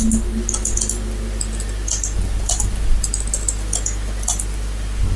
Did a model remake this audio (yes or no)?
no